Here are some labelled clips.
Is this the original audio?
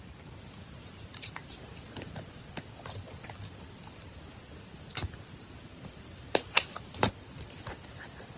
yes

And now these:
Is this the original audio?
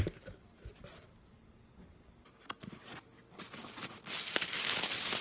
yes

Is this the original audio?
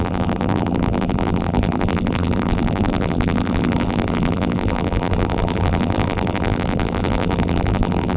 no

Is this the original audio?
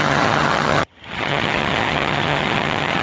no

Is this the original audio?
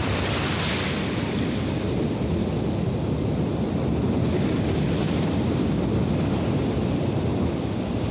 yes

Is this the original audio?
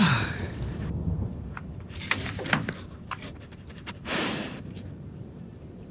no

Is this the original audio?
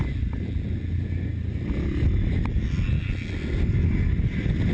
yes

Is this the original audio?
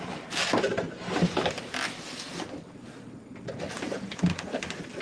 yes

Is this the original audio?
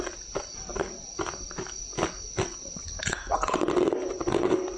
yes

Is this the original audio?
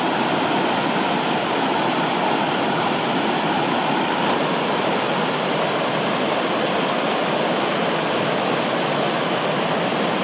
yes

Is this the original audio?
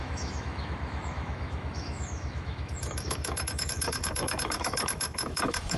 no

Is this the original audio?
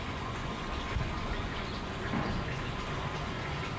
no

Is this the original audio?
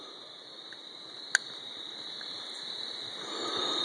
yes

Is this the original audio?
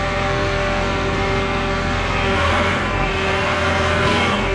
no